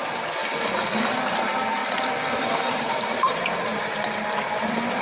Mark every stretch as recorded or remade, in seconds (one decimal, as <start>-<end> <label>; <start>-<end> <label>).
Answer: 0.0-0.4 remade; 0.4-1.3 recorded; 1.3-1.8 remade; 1.8-2.7 recorded; 2.7-5.0 remade